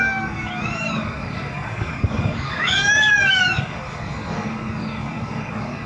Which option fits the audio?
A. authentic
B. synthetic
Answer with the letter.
B